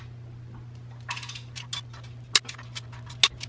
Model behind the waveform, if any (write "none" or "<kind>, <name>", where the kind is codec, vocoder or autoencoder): none